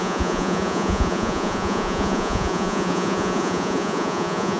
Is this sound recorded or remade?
remade